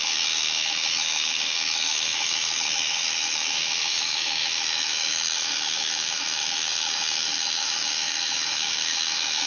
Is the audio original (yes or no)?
no